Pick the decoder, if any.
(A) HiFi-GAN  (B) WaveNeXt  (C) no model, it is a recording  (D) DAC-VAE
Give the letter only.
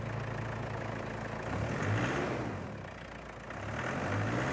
C